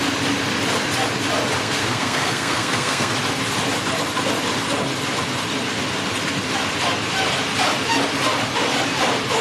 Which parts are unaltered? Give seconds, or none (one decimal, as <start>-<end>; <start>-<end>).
0.0-1.6; 3.1-9.4